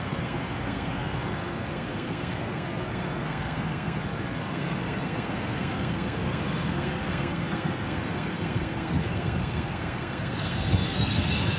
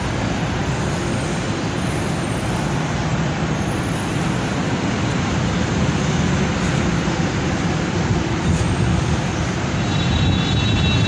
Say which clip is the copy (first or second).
first